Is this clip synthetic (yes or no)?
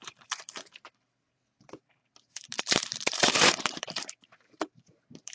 yes